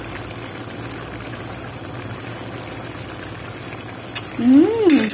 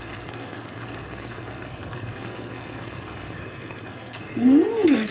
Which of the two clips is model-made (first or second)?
second